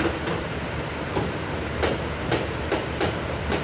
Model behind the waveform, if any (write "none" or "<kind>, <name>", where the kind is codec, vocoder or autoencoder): none